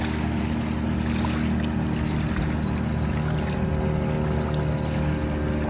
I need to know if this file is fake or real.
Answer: real